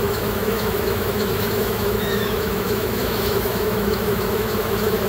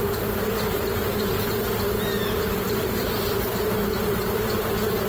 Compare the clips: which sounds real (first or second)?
second